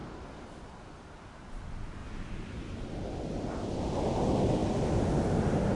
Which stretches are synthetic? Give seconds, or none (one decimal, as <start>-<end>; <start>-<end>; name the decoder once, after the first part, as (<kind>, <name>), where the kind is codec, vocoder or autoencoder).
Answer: none